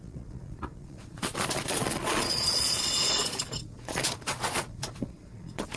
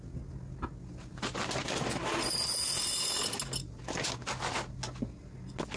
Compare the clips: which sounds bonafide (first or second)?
second